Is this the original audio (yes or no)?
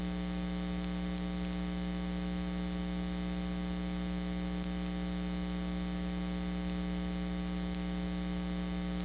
yes